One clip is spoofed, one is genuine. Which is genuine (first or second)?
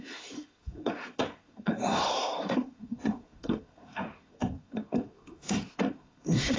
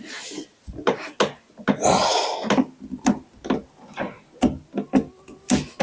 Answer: second